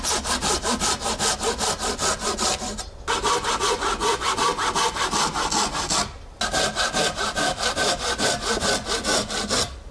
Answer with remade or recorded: recorded